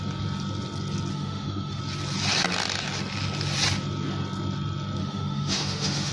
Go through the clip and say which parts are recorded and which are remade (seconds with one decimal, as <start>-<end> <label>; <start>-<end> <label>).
0.0-1.1 recorded; 1.1-1.8 remade; 1.8-5.0 recorded; 5.0-6.1 remade